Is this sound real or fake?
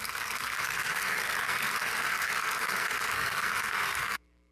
fake